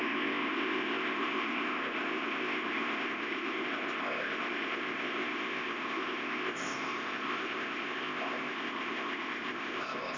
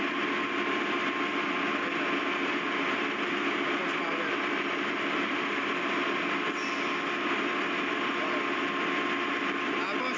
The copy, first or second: first